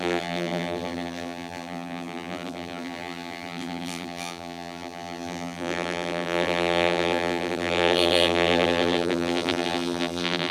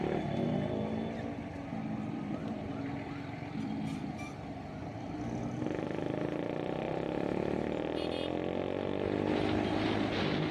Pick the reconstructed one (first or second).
first